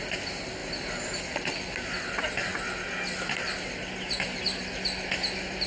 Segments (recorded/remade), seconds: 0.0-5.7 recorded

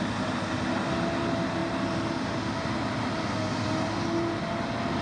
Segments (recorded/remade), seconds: 0.0-5.0 recorded

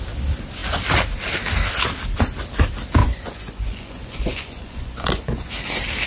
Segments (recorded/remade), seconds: 0.0-3.0 recorded; 3.0-5.5 remade; 5.5-6.1 recorded

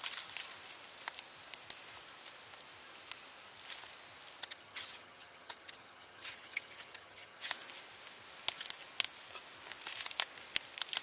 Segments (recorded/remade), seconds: 0.0-4.4 recorded; 4.4-7.5 remade; 7.5-11.0 recorded